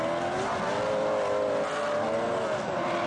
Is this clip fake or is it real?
real